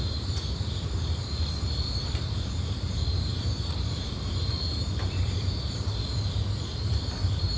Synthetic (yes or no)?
yes